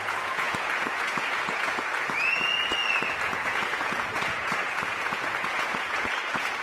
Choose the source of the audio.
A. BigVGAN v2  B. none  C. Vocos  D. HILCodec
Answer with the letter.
C